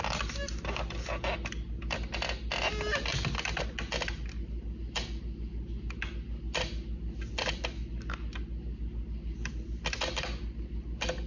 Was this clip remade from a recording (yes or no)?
no